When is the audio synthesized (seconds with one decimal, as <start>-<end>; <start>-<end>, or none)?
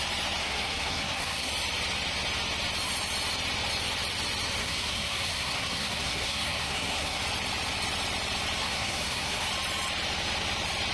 0.4-1.5; 4.6-7.2; 8.6-9.5